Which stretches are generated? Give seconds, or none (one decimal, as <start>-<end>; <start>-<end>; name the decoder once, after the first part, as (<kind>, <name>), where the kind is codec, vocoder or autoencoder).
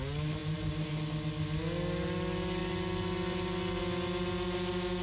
0.4-1.0 (vocoder, BigVGAN v2)